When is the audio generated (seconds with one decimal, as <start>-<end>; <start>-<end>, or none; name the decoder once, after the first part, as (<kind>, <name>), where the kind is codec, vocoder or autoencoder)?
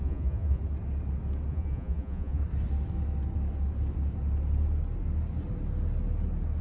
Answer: 0.0-0.6 (vocoder, Vocos); 1.5-2.4